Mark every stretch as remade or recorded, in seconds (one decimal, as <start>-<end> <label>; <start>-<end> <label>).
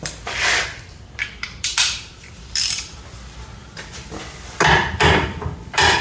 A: 0.0-6.0 remade